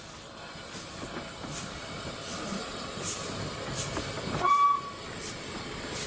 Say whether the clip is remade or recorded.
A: recorded